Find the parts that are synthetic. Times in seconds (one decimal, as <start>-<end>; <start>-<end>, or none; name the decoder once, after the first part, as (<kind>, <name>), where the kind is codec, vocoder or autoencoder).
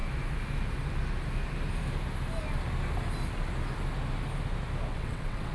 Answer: 4.9-5.5 (vocoder, WaveNeXt)